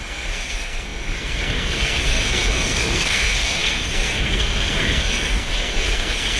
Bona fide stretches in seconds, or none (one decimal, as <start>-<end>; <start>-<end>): none